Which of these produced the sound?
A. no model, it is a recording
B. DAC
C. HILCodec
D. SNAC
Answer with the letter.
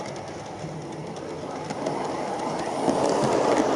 A